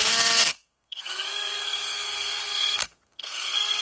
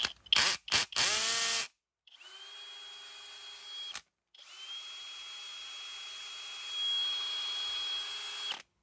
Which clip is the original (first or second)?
second